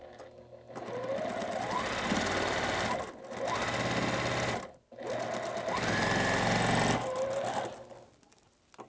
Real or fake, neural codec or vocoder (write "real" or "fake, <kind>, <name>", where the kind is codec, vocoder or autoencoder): real